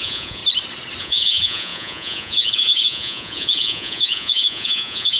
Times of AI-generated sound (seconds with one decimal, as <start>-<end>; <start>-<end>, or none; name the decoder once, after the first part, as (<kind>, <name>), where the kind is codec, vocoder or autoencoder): 0.0-0.4 (vocoder, Vocos); 1.0-5.2